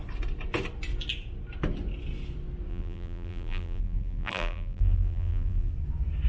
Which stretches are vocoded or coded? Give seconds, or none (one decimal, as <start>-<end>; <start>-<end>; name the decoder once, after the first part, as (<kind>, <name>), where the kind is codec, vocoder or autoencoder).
2.7-5.7 (vocoder, BigVGAN v2)